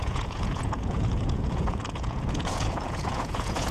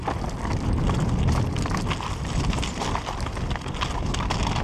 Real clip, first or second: second